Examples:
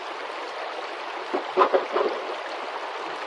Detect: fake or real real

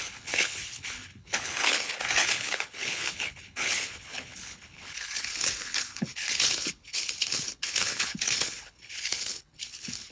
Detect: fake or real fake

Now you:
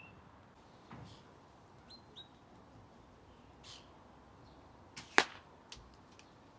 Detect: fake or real real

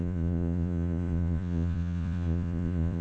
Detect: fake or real fake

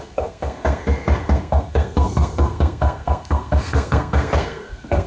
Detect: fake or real fake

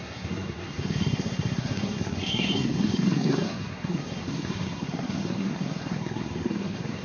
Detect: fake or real fake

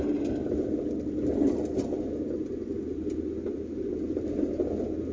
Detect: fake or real real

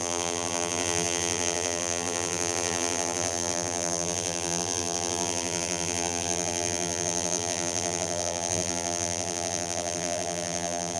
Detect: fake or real fake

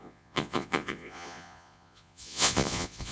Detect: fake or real fake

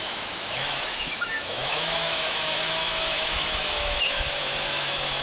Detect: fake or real fake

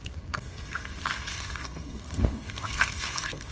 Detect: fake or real fake